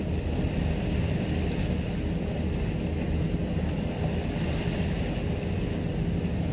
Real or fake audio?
real